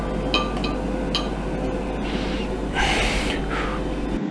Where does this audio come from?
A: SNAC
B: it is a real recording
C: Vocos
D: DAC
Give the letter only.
B